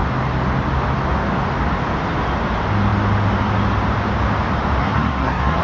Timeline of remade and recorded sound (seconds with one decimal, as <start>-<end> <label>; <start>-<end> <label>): 0.0-4.8 recorded; 4.8-5.6 remade